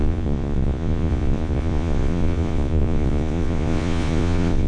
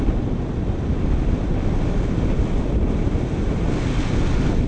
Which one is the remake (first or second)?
first